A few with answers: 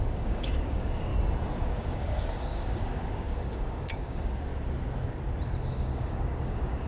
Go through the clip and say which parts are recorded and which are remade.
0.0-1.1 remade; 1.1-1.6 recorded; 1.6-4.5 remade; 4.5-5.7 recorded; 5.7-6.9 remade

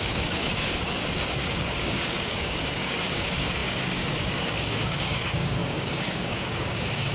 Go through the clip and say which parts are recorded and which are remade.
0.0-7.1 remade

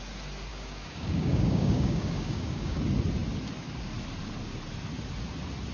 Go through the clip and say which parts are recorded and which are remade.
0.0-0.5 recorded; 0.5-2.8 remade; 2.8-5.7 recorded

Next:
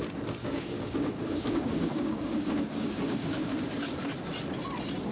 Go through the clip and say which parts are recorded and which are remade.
0.0-0.4 recorded; 0.4-3.5 remade; 3.5-5.1 recorded

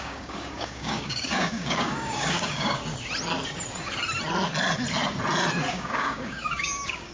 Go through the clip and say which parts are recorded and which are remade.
0.0-2.8 remade; 2.8-5.7 recorded; 5.7-7.1 remade

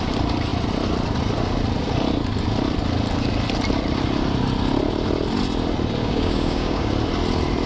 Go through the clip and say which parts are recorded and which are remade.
0.0-6.0 recorded; 6.0-6.9 remade; 6.9-7.7 recorded